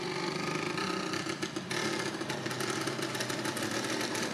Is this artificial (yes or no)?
no